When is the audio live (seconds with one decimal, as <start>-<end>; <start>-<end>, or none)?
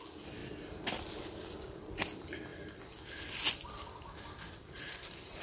0.0-5.4